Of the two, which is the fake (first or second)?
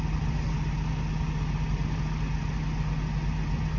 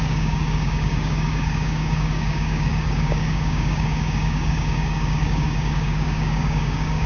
second